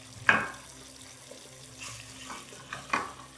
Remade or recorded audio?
recorded